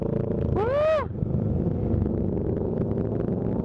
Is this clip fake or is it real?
real